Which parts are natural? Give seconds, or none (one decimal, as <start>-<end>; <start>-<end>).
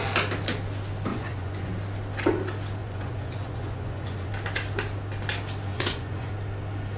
0.0-1.1; 1.7-2.8; 4.3-5.7; 6.3-7.0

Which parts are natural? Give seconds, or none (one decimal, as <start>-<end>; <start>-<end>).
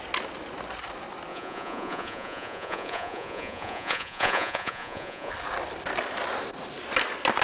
0.0-1.3; 5.3-7.4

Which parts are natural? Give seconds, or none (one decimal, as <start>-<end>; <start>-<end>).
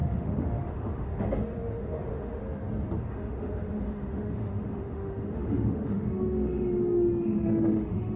2.4-3.0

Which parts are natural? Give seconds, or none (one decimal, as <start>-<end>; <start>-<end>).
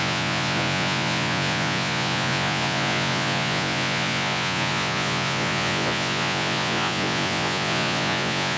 none